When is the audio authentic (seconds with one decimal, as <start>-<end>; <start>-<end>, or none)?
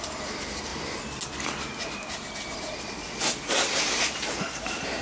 0.0-5.0